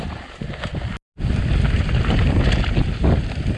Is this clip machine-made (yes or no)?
no